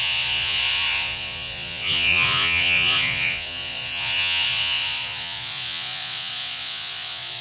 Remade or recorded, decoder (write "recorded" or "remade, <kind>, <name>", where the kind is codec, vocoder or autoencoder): remade, vocoder, Vocos